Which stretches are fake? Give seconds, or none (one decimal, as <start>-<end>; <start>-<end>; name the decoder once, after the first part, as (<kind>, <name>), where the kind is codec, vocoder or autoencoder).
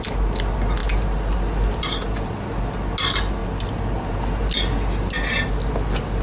none